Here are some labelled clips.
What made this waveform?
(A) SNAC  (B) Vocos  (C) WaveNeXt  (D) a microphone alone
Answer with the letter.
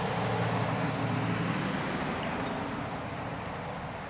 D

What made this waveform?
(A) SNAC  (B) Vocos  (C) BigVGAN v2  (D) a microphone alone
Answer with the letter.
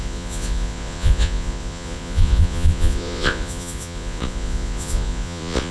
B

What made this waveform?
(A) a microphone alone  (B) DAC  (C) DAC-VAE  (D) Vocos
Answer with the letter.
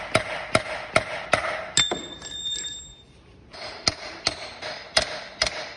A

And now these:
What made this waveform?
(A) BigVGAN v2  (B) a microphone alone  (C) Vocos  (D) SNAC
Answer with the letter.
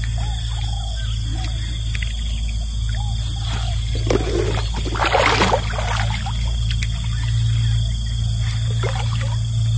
B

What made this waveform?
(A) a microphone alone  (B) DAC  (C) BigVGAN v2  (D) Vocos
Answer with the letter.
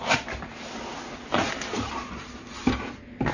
A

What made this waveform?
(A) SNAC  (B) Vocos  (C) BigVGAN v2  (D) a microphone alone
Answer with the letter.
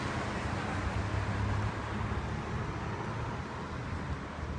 D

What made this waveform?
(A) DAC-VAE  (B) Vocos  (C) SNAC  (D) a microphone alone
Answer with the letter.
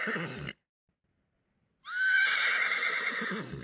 D